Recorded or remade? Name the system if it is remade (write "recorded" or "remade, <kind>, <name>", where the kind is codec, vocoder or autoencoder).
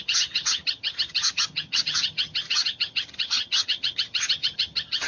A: remade, vocoder, HiFi-GAN